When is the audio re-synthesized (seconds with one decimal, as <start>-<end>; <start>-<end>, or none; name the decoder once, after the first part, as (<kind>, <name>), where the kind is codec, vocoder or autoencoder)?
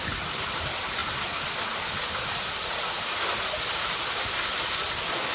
none